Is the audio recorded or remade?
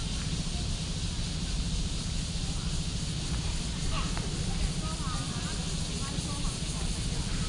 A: recorded